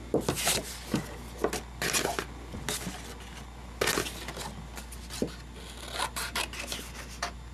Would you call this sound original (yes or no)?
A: yes